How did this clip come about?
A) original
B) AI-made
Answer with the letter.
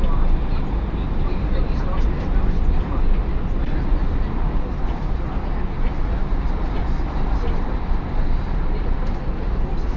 A